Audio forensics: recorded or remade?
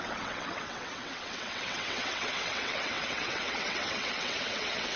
remade